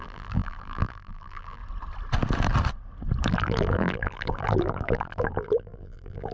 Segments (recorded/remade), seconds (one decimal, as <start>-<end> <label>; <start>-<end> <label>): 0.0-1.6 remade; 1.6-3.3 recorded; 3.3-6.3 remade